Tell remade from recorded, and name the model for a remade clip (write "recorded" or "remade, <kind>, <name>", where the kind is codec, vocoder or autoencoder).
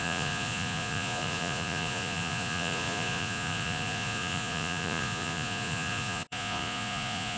remade, vocoder, Vocos